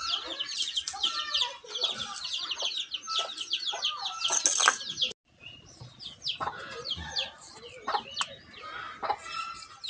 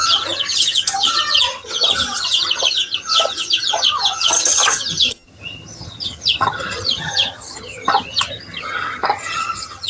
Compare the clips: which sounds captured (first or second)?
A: first